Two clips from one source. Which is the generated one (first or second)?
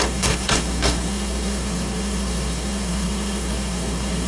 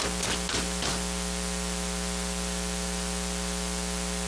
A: first